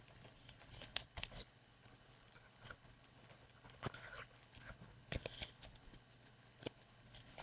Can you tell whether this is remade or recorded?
remade